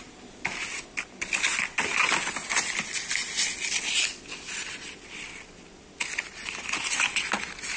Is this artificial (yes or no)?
no